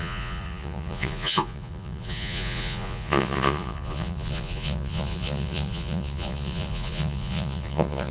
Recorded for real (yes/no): no